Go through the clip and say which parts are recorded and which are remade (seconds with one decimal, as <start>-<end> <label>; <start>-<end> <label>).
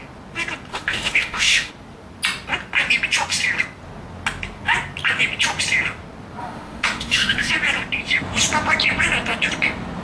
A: 0.0-0.7 recorded; 0.7-1.7 remade; 1.7-6.4 recorded; 6.4-7.5 remade; 7.5-10.0 recorded